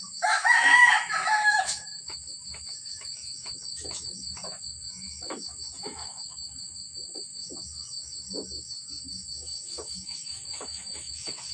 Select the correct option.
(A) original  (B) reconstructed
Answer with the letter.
B